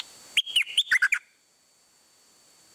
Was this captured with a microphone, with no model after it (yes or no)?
yes